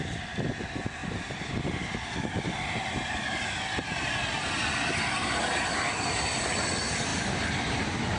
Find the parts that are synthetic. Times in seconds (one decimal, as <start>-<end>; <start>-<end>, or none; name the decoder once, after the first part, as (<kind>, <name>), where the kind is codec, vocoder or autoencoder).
1.0-1.5 (vocoder, BigVGAN v2)